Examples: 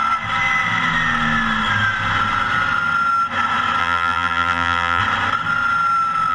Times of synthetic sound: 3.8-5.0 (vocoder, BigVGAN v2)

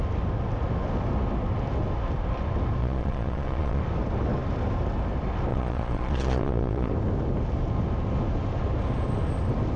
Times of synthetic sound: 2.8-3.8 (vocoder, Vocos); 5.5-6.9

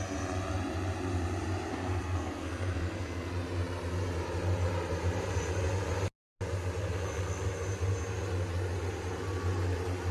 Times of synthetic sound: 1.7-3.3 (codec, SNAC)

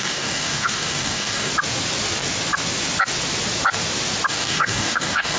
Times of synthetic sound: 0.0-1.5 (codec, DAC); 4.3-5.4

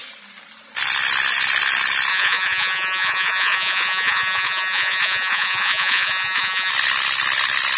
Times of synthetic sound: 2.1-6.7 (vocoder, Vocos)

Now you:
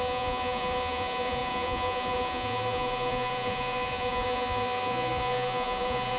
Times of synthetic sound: 0.0-6.2 (vocoder, Vocos)

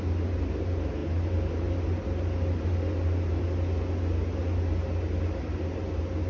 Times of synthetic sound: none

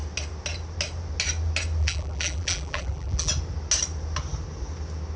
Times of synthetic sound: 1.8-3.3 (vocoder, BigVGAN v2)